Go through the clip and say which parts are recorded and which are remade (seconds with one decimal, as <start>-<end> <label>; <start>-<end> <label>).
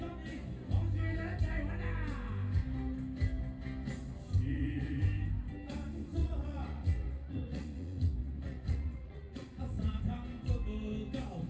0.0-4.5 recorded; 4.5-5.0 remade; 5.0-6.2 recorded; 6.2-10.0 remade; 10.0-11.5 recorded